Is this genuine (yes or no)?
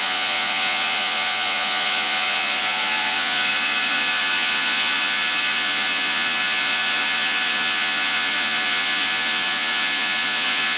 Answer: no